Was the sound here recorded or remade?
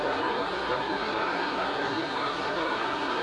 remade